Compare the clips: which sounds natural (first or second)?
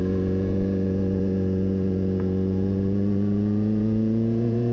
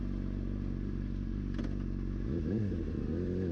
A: second